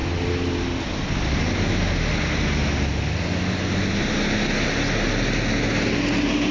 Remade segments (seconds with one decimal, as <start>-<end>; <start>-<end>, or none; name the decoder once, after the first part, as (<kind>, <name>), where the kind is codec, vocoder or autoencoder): none

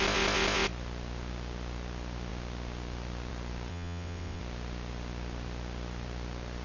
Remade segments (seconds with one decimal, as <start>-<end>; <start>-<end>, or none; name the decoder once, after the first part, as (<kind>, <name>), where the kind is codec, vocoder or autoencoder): 3.7-4.4 (vocoder, WaveNeXt)

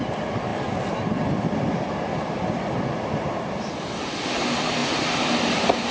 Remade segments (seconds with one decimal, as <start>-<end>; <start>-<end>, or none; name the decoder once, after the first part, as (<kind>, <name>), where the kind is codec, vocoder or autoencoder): none

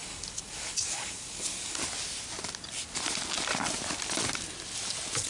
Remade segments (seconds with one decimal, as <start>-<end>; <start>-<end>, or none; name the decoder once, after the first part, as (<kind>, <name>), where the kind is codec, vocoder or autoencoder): 0.0-1.8 (codec, DAC)

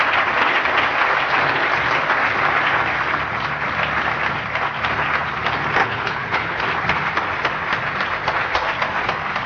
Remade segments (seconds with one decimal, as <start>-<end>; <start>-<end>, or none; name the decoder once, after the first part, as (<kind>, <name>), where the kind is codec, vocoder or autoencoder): 5.8-6.6 (codec, HILCodec)